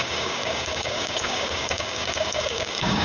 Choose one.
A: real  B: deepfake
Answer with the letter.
B